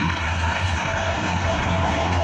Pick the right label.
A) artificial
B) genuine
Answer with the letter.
A